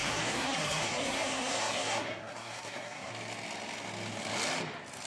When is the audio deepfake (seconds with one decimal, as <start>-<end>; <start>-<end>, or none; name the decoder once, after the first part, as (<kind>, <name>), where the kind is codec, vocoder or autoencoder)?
0.0-3.1 (codec, SNAC)